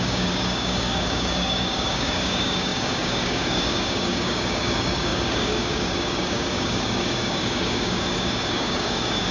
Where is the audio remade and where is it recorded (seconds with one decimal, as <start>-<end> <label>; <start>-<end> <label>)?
0.0-9.3 remade